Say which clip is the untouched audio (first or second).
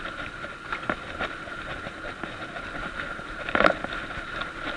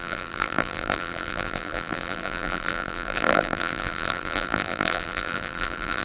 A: first